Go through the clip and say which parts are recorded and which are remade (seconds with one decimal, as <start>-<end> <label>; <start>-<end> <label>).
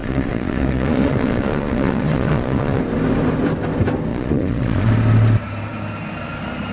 0.0-2.8 remade; 2.8-4.1 recorded; 4.1-4.9 remade; 4.9-6.7 recorded